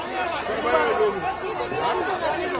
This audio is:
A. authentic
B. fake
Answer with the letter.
A